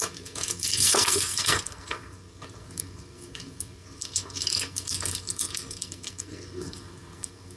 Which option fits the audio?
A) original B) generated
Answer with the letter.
B